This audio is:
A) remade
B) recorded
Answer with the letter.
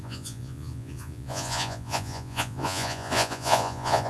A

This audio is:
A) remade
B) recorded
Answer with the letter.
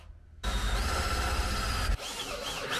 B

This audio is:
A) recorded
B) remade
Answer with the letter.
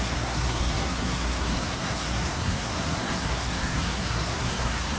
B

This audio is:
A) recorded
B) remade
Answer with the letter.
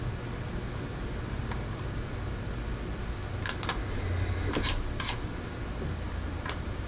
A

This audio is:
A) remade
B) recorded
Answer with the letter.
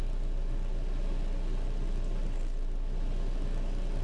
B